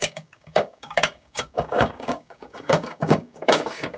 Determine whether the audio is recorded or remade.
remade